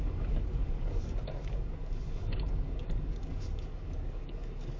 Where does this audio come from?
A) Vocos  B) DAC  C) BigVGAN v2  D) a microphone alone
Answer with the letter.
B